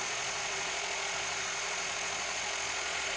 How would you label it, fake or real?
fake